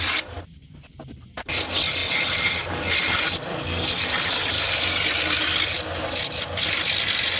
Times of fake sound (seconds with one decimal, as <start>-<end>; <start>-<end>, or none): none